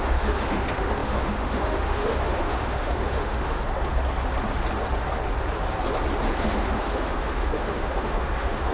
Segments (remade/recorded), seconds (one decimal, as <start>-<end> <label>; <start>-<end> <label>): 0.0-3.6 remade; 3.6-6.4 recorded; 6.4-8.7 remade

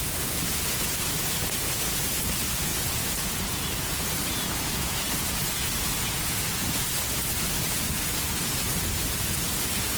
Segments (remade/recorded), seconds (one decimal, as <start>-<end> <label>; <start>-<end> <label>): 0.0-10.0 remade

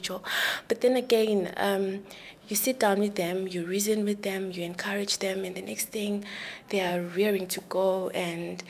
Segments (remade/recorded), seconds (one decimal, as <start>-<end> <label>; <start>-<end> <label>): 0.0-2.3 recorded; 2.3-6.3 remade; 6.3-6.9 recorded; 6.9-8.7 remade